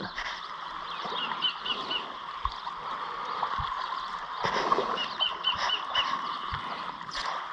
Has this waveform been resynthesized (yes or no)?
no